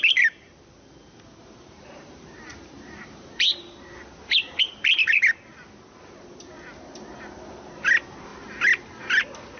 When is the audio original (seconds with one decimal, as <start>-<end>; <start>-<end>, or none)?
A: 0.0-1.4; 4.6-9.6